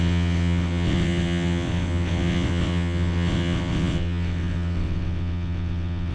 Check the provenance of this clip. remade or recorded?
remade